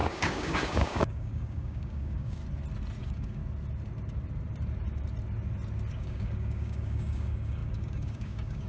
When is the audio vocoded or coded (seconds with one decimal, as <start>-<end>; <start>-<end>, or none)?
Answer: 0.0-2.4; 3.0-3.4; 5.9-8.7